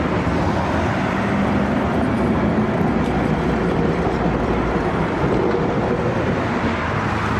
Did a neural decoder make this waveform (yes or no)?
yes